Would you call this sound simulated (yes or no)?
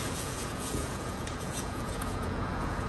yes